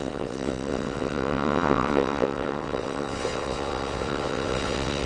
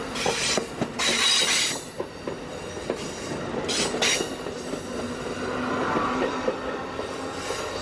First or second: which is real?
second